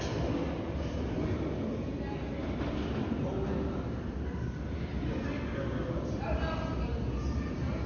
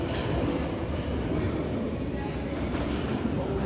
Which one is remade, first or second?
second